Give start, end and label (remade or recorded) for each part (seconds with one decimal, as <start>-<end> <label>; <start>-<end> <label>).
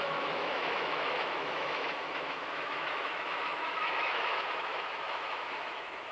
0.0-6.1 remade